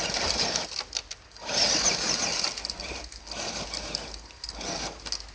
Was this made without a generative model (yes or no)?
yes